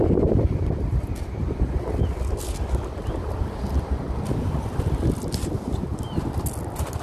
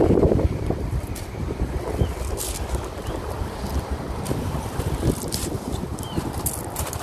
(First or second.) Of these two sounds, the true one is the first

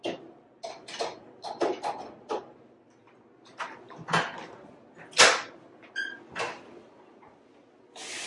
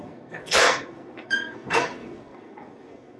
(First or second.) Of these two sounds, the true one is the first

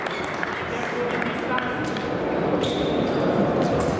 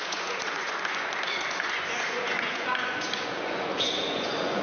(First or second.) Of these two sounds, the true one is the first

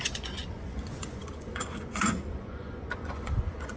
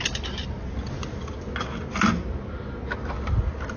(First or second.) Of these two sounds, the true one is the second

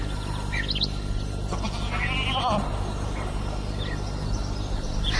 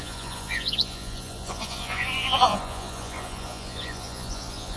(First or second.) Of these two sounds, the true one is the first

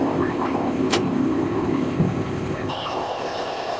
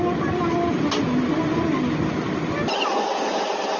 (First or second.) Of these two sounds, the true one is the second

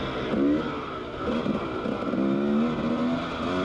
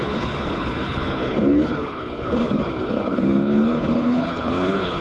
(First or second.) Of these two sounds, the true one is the first